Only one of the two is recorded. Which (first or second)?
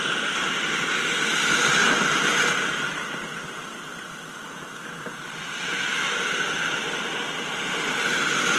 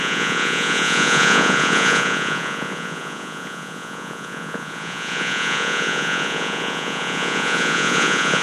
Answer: first